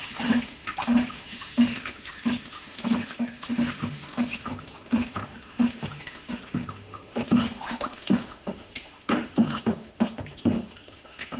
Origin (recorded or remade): remade